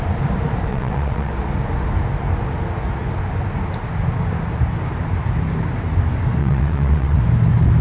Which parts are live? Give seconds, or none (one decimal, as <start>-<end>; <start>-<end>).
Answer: 0.0-0.7; 1.3-6.4; 7.2-7.8